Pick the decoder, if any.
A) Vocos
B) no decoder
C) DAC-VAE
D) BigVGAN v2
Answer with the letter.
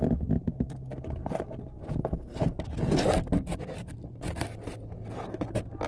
B